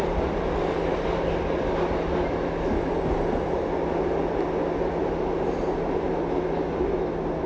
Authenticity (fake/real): real